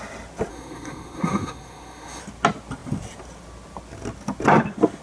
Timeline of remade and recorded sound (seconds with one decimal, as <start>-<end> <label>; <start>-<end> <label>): 0.0-0.5 recorded; 0.5-2.2 remade; 2.2-5.0 recorded